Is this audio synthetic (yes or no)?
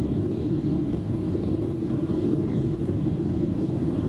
yes